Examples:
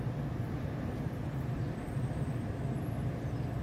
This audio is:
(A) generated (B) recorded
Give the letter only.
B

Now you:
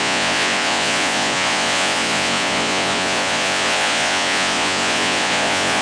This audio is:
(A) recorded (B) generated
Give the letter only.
B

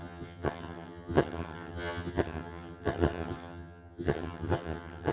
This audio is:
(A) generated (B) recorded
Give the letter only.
A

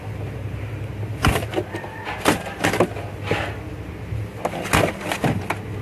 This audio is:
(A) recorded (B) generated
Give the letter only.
A